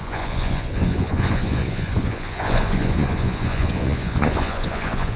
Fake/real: fake